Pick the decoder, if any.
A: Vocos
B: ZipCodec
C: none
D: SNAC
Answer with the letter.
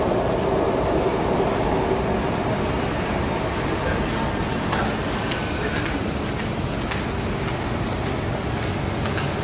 C